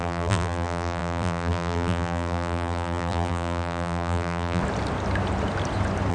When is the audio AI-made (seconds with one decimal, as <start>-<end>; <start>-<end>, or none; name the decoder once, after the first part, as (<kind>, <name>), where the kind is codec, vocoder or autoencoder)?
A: 0.0-4.6 (vocoder, BigVGAN v2)